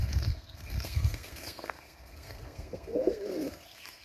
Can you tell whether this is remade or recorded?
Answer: remade